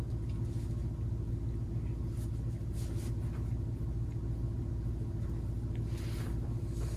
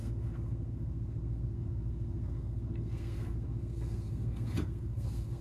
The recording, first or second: first